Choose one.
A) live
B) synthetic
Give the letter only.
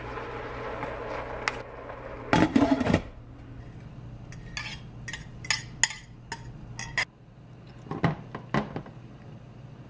A